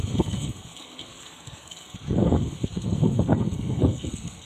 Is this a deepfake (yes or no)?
yes